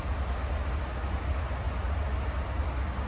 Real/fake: real